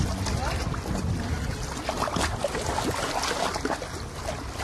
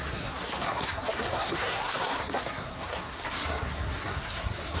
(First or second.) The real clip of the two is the first